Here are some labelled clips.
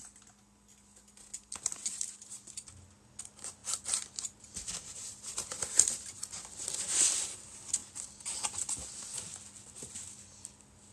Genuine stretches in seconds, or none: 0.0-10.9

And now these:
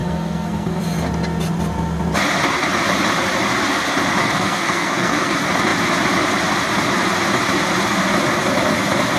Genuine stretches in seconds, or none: 0.8-4.2; 5.3-9.2

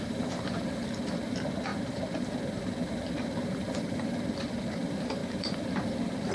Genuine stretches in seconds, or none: none